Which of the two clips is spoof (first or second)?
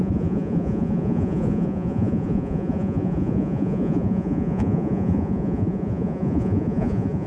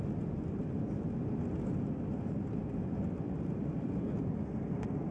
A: first